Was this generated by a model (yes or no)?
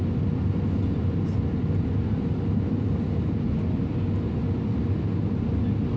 no